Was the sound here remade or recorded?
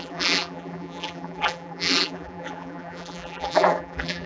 remade